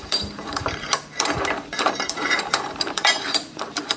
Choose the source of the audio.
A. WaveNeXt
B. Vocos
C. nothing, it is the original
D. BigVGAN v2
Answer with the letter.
D